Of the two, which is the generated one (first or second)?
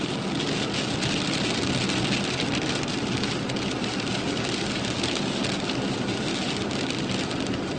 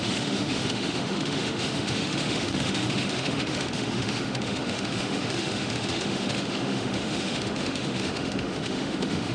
second